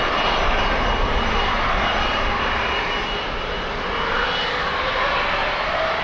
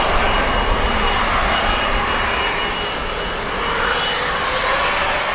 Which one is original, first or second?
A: second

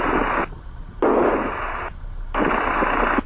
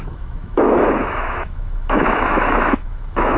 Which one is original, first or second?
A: first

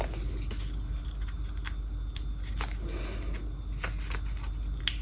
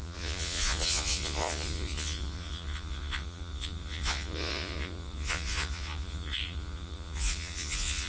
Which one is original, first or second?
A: first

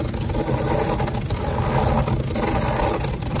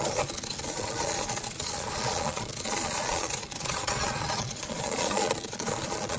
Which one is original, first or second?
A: first